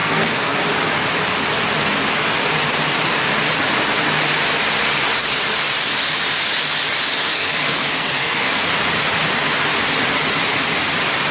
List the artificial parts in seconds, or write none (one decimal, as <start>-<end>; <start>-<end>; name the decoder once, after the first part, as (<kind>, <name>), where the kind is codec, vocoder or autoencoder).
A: 0.0-0.6 (codec, SNAC); 7.2-8.6